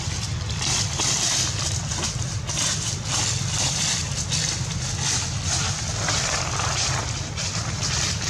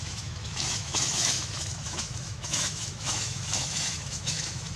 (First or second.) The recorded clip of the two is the first